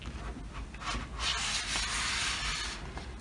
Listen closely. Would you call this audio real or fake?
real